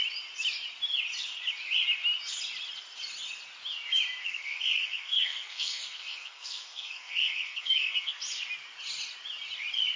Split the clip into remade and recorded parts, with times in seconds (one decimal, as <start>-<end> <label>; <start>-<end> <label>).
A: 0.0-4.2 recorded; 4.2-8.2 remade; 8.2-10.0 recorded